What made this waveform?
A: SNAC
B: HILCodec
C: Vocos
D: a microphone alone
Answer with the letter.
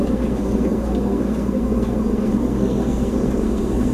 A